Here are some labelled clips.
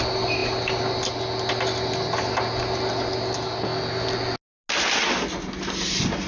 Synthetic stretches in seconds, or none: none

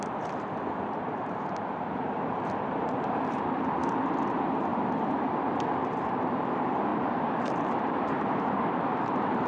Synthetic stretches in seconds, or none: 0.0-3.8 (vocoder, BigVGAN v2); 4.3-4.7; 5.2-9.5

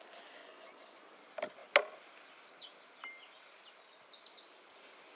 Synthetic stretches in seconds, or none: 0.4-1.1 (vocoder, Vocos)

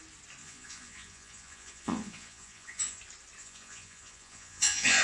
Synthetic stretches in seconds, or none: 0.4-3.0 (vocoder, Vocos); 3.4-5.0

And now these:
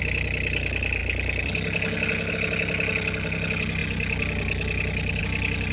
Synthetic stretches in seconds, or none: none

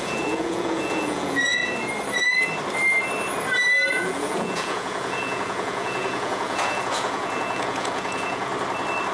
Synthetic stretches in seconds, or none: 0.0-1.6 (vocoder, Vocos); 3.9-8.5

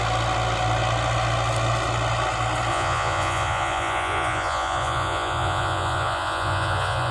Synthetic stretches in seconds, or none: 2.7-7.1 (vocoder, Vocos)